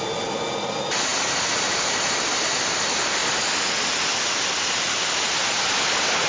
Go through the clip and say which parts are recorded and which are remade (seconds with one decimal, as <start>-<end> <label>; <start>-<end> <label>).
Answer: 0.0-6.3 recorded